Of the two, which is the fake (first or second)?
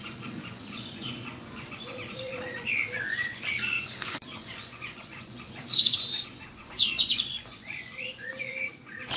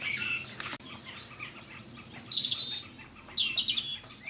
first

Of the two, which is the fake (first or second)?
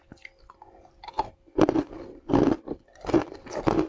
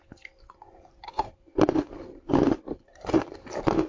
second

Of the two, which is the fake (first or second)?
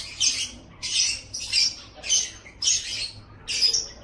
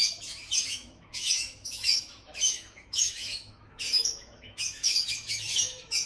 second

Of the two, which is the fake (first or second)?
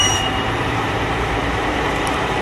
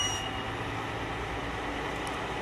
first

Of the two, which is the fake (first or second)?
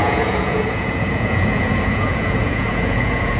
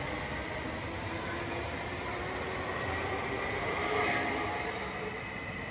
first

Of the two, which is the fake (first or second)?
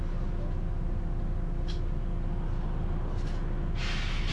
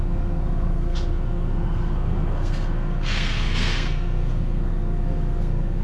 second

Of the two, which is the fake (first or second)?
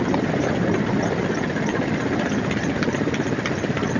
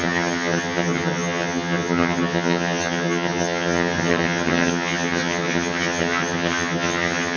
second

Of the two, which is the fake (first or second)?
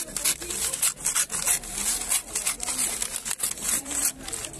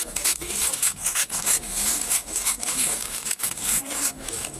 second